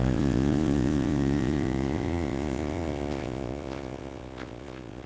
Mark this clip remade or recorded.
remade